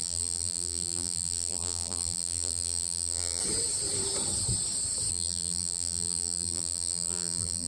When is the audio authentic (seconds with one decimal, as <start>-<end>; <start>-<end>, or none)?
3.4-5.1